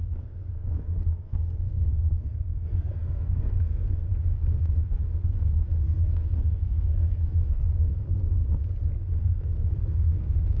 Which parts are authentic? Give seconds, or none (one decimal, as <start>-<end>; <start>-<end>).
4.1-4.8; 8.4-9.2